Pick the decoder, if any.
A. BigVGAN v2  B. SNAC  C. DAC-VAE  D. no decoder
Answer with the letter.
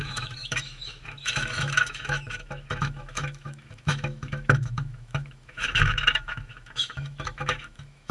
C